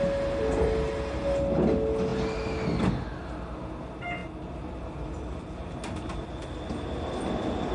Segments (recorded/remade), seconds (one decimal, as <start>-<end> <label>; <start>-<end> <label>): 0.0-7.7 recorded